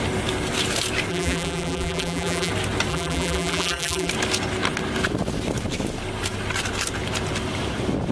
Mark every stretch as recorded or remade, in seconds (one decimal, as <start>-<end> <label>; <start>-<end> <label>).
0.0-1.1 recorded; 1.1-2.5 remade; 2.5-2.9 recorded; 2.9-4.1 remade; 4.1-8.1 recorded